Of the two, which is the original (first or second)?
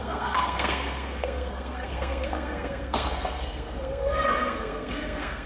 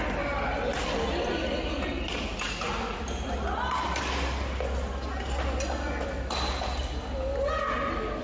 second